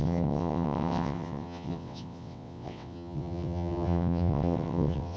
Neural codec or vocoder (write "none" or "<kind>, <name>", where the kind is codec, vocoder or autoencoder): vocoder, WaveNeXt